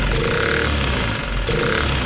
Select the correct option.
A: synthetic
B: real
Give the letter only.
B